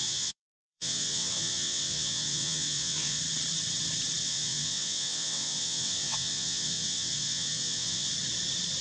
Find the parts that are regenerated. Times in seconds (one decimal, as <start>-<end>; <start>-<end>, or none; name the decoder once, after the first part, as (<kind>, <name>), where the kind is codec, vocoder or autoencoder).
0.0-3.2 (vocoder, WaveNeXt); 4.2-8.1

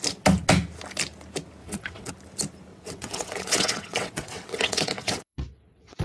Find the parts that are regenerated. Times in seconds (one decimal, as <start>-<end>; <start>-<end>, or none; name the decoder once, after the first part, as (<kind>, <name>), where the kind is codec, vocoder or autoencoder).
1.6-2.1 (vocoder, WaveNeXt); 2.7-6.0